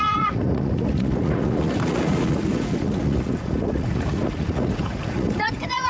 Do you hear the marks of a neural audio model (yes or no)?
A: yes